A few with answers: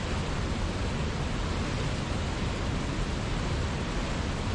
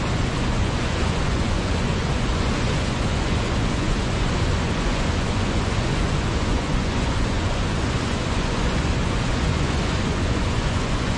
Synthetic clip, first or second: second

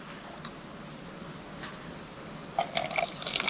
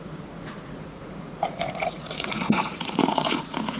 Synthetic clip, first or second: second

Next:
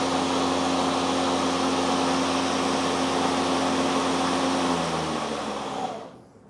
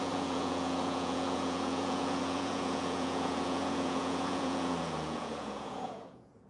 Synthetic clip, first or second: second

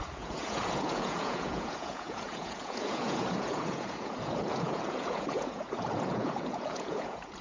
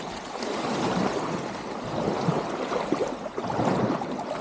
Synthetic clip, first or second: first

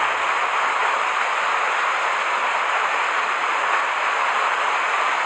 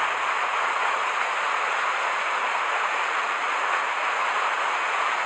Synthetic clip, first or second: second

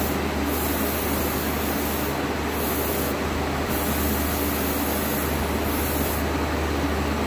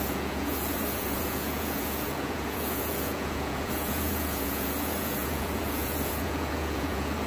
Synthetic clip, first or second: second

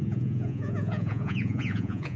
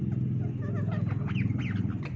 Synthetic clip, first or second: first